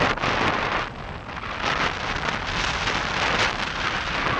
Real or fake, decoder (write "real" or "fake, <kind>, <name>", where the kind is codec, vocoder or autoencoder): real